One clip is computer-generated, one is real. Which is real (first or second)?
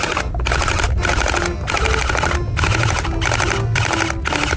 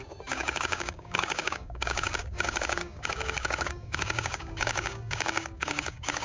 first